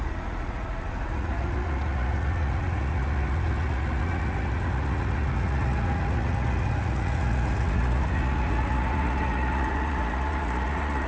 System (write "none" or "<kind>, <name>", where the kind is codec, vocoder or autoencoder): vocoder, Vocos